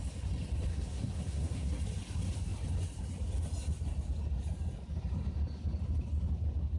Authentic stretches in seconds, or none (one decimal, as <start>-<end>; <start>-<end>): 0.0-0.7; 1.7-6.8